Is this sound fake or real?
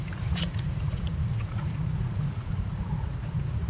fake